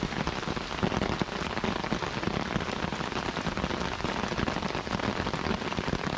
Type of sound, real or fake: real